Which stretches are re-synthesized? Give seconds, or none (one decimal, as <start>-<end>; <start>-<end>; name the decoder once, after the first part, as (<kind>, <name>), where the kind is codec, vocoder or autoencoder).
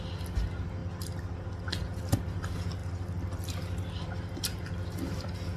0.8-1.5 (vocoder, BigVGAN v2); 2.8-5.6